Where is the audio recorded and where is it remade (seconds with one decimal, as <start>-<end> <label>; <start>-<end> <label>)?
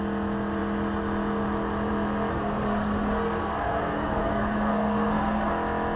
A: 0.0-2.3 recorded; 2.3-5.5 remade; 5.5-6.0 recorded